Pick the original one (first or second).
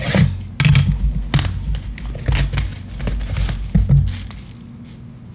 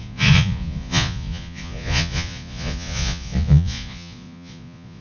first